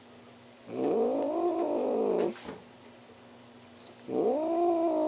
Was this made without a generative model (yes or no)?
yes